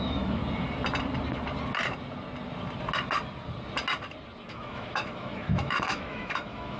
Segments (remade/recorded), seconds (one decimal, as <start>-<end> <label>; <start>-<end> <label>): 0.0-0.4 remade; 0.4-4.5 recorded; 4.5-6.8 remade